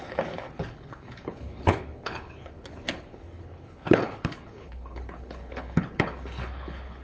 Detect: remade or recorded remade